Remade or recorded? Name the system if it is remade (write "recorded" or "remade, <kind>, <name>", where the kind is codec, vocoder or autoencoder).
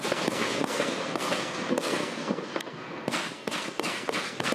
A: remade, codec, SNAC